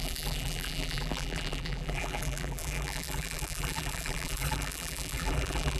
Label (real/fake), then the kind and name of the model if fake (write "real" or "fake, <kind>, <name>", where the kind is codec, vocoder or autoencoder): fake, vocoder, BigVGAN v2